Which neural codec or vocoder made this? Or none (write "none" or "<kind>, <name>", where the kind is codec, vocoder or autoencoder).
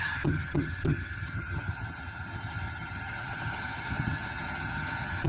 vocoder, HiFi-GAN